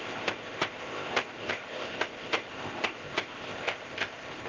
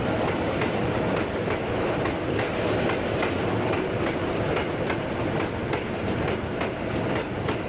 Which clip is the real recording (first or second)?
second